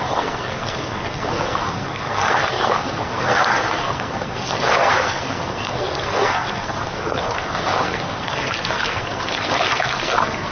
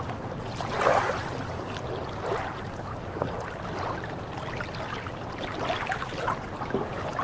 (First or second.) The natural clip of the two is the second